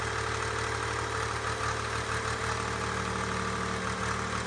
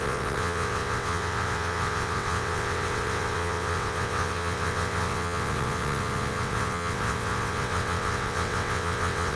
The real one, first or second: first